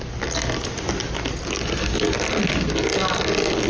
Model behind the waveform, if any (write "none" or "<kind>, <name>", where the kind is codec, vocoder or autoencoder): none